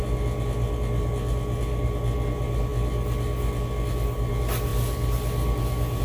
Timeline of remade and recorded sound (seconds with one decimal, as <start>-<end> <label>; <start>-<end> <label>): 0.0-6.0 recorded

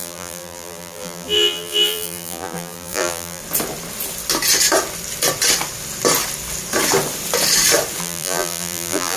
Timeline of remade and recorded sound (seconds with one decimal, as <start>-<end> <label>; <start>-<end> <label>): 0.0-3.4 remade; 3.4-8.0 recorded; 8.0-9.2 remade

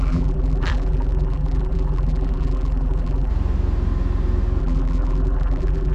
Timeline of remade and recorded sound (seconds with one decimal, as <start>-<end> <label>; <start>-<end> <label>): 0.0-3.3 remade; 3.3-4.6 recorded; 4.6-5.9 remade

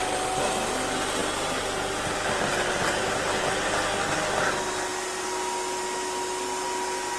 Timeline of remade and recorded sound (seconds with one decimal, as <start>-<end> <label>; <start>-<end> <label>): 0.0-7.2 recorded

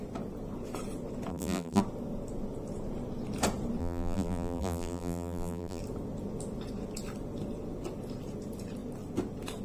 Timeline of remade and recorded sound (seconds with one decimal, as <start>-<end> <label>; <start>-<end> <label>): 0.0-1.3 recorded; 1.3-1.8 remade; 1.8-3.8 recorded; 3.8-5.8 remade; 5.8-9.6 recorded